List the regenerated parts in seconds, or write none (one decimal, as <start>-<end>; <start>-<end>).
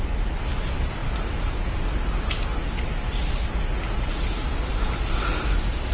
none